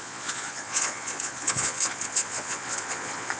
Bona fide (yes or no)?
no